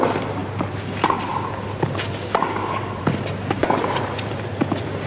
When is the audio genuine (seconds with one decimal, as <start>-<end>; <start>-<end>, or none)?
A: 0.0-3.6; 4.5-5.1